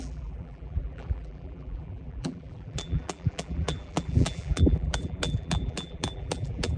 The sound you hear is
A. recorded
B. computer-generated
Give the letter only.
B